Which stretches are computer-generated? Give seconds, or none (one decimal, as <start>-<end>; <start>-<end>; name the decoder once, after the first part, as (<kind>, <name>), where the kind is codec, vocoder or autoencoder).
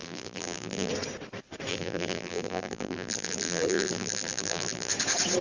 0.0-0.9 (vocoder, BigVGAN v2); 1.7-4.9